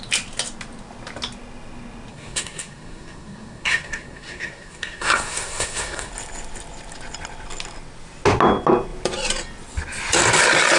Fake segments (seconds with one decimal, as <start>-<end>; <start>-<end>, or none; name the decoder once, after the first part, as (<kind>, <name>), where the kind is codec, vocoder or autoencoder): 2.1-6.1 (codec, SNAC)